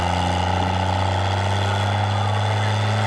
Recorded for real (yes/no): yes